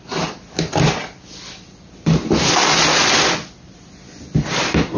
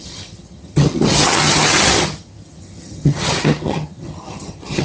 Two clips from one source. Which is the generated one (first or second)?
second